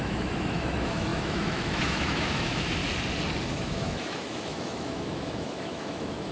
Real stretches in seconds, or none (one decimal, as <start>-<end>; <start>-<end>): 2.8-3.5